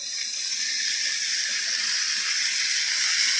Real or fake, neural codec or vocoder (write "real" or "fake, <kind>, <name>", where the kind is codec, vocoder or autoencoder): real